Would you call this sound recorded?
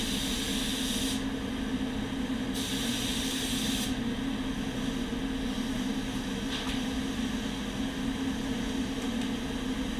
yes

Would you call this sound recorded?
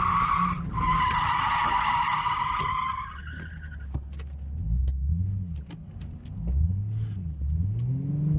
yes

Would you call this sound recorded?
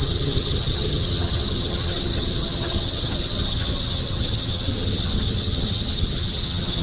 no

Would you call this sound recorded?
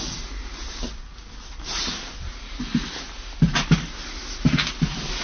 yes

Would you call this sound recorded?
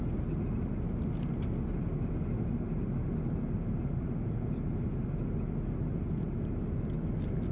yes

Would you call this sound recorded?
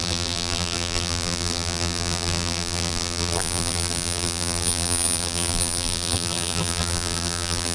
no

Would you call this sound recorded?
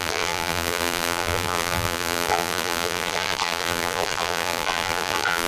no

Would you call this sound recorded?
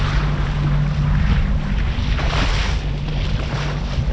yes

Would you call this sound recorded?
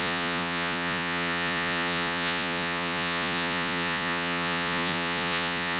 no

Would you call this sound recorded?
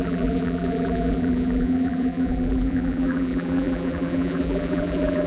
no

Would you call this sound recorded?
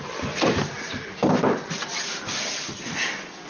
yes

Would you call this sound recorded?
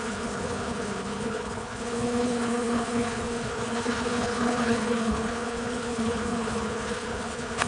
no